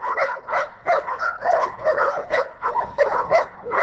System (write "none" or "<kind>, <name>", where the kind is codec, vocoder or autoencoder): codec, HILCodec